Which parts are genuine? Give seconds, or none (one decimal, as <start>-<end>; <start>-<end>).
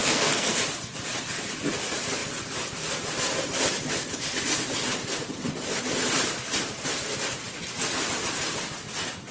0.6-9.3